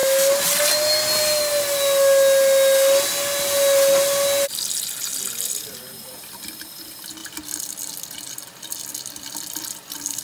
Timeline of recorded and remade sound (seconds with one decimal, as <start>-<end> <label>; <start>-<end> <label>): 0.0-10.2 recorded